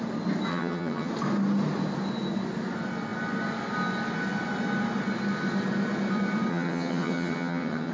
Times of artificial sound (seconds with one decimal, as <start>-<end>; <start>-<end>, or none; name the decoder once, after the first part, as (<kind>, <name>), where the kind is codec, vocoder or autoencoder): 0.5-1.1 (vocoder, HiFi-GAN); 6.5-7.9